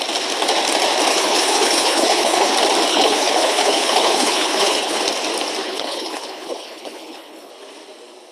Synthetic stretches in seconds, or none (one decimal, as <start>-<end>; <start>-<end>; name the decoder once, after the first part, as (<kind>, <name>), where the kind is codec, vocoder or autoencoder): 1.1-2.5 (codec, HILCodec); 2.9-5.0; 5.6-7.5